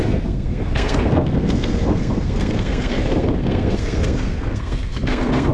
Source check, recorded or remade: remade